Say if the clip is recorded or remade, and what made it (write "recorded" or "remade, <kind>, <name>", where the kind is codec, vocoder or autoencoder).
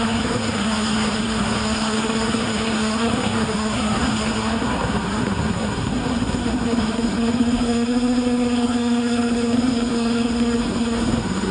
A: remade, codec, SNAC